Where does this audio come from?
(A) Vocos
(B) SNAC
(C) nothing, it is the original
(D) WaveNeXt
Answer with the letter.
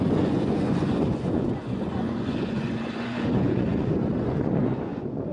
A